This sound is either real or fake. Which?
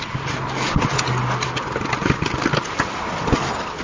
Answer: real